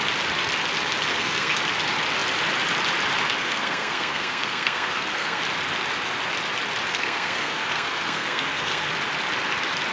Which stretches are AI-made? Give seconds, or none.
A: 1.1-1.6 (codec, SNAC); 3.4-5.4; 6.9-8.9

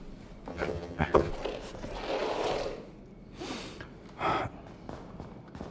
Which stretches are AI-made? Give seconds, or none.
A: 0.5-1.3 (vocoder, HiFi-GAN)

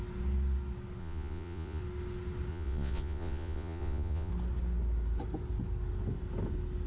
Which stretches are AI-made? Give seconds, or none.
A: 1.0-1.8 (vocoder, Vocos); 2.5-4.3

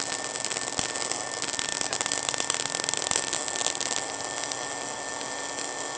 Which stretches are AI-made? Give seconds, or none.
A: none

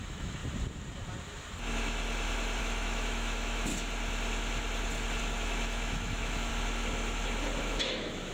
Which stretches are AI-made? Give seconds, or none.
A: 0.0-0.4 (autoencoder, DAC-VAE); 2.6-3.7; 5.2-6.5; 7.6-8.3

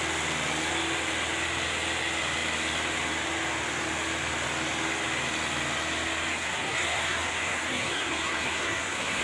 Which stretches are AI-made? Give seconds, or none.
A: 6.3-9.2 (codec, SNAC)

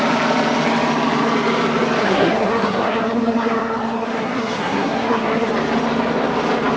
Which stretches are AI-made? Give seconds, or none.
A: 2.0-5.5 (codec, SNAC)

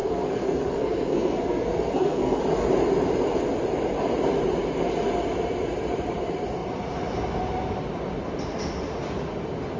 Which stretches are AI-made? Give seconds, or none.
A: 0.0-2.4 (codec, SNAC)